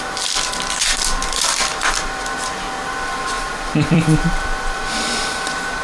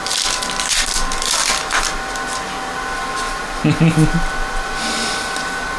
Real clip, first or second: second